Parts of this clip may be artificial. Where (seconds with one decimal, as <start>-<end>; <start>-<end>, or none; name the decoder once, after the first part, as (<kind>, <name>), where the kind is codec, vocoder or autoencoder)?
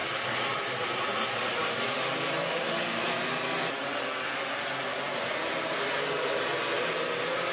none